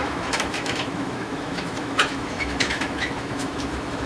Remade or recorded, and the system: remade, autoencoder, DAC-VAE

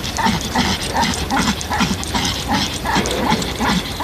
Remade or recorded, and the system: recorded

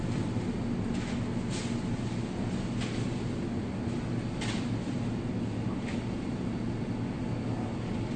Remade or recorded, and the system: recorded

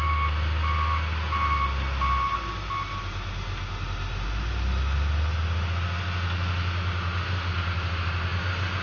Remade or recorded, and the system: recorded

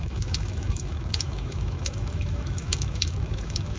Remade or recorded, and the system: remade, autoencoder, DAC-VAE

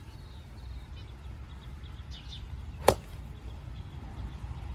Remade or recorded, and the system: recorded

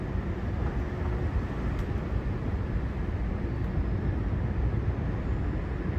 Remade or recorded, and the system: recorded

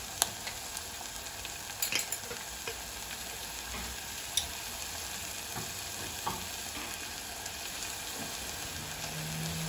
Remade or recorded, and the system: recorded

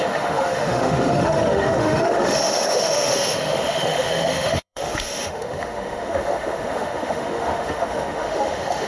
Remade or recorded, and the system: remade, autoencoder, DAC-VAE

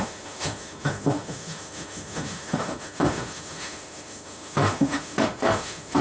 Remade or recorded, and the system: remade, autoencoder, DAC-VAE